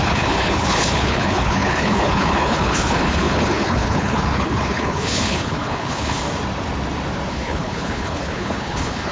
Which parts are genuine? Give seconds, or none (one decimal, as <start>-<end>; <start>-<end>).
6.2-7.3